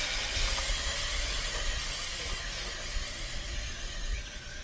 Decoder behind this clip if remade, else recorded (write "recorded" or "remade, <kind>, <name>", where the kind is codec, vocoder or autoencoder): recorded